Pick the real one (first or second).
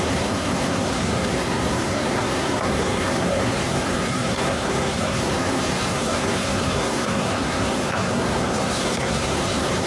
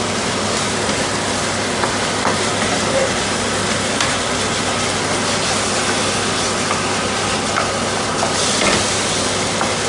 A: second